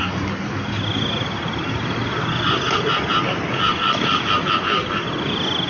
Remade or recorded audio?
recorded